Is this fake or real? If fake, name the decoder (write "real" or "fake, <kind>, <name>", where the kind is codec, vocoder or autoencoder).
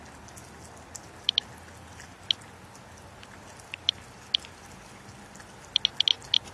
real